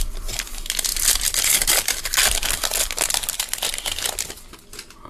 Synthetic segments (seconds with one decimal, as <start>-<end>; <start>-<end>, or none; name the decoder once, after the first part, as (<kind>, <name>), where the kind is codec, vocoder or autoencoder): 0.9-2.3 (vocoder, BigVGAN v2)